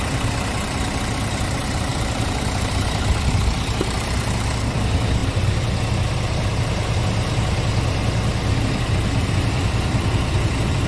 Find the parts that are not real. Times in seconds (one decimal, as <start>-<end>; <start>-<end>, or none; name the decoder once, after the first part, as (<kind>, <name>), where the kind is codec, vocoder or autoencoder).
0.0-5.2 (vocoder, BigVGAN v2); 8.6-10.9